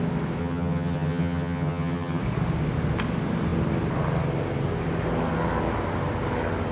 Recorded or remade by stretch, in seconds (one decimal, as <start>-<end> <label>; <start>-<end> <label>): 0.0-0.4 recorded; 0.4-2.2 remade; 2.2-6.7 recorded